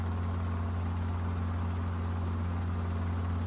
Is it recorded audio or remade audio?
recorded